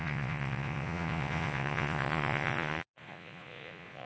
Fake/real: fake